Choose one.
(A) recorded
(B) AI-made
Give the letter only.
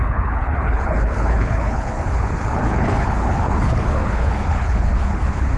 B